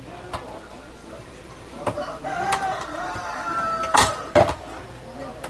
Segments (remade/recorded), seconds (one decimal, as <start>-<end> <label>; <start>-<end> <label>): 0.0-1.0 recorded; 1.0-4.3 remade; 4.3-5.5 recorded